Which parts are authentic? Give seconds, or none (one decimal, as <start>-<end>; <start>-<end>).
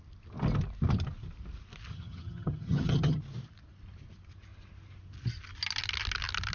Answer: 0.0-1.9; 3.2-6.5